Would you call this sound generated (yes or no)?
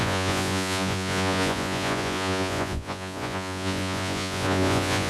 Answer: yes